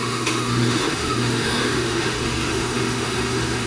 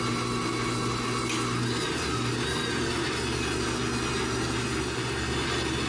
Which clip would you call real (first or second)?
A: second